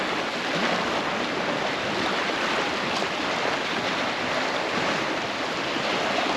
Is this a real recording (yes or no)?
yes